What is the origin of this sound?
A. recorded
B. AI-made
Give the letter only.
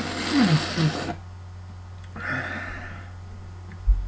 A